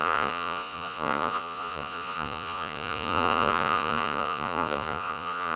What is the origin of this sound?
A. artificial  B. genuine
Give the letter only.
A